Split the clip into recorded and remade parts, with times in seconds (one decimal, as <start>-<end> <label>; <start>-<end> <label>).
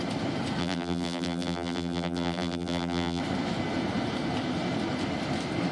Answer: 0.0-0.6 recorded; 0.6-3.2 remade; 3.2-5.7 recorded